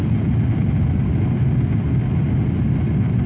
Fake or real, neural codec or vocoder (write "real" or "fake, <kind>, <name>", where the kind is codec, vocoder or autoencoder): real